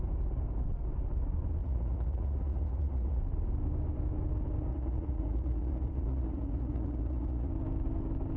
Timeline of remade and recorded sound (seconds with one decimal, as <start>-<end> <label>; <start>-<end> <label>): 0.0-1.6 recorded; 1.6-3.2 remade; 3.2-4.7 recorded; 4.7-7.5 remade; 7.5-8.4 recorded